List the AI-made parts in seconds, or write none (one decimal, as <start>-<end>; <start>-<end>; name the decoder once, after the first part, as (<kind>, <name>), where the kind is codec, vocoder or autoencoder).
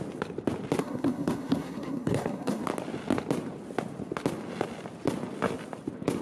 0.8-2.6 (codec, SNAC)